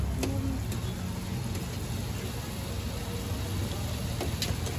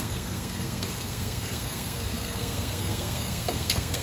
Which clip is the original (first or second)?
first